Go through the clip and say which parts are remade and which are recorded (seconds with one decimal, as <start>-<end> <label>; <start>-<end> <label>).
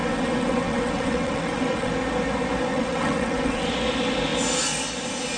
0.0-1.9 remade; 1.9-2.7 recorded; 2.7-3.7 remade; 3.7-5.4 recorded